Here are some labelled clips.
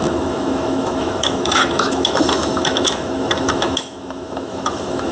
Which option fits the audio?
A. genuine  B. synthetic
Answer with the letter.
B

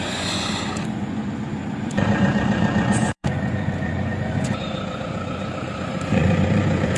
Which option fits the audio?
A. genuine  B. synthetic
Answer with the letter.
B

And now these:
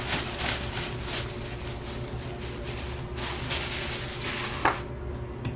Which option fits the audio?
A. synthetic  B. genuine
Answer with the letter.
B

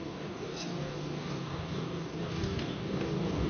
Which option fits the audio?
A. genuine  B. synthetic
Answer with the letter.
B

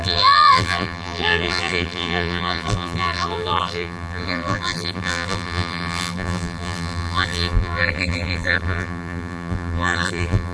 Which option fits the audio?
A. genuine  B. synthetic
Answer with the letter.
B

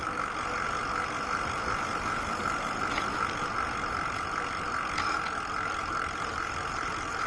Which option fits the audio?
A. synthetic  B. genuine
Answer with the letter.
B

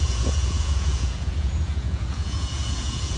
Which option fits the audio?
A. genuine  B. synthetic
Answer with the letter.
B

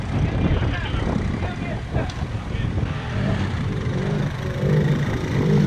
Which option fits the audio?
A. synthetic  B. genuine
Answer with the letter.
A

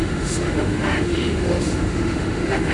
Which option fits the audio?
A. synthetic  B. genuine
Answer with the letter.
A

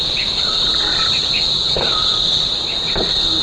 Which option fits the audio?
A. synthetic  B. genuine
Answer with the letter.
B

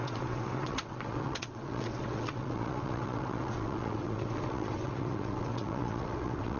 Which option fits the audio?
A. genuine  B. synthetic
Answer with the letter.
B